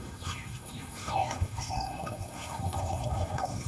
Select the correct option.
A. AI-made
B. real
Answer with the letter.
A